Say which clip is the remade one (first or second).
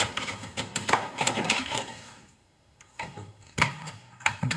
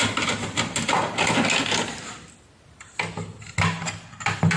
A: first